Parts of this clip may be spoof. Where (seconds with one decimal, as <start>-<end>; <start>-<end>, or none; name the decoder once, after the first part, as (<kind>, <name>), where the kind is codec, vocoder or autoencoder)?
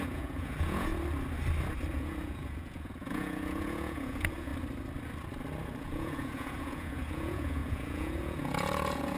0.0-0.9 (vocoder, Vocos); 1.9-4.5; 5.8-9.2